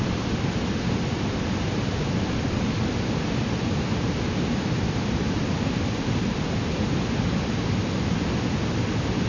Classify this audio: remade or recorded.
recorded